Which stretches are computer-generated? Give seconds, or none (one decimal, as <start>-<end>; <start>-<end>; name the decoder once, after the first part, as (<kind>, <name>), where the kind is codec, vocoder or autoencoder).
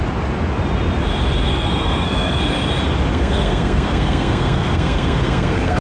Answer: 1.5-2.4 (codec, SNAC); 3.1-5.8